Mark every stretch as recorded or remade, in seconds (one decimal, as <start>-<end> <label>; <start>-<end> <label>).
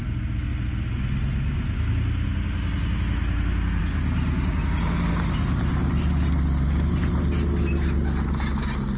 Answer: 0.0-9.0 recorded